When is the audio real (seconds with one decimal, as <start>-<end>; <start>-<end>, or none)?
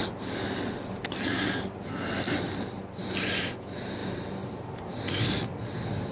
0.0-6.1